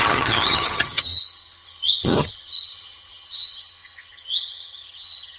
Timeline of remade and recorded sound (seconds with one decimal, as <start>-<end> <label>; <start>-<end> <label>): 0.0-5.4 remade